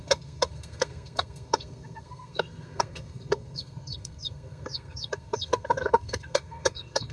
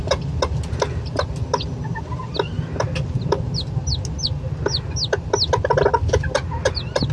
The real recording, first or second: second